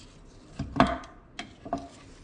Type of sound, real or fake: real